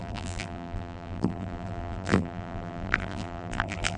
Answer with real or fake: fake